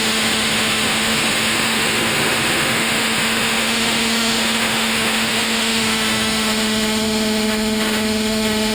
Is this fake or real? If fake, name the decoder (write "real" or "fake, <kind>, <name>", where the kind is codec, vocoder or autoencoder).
fake, autoencoder, DAC-VAE